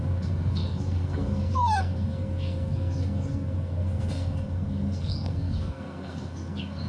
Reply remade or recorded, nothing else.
remade